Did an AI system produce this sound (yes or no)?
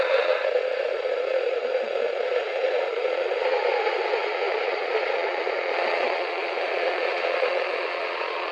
yes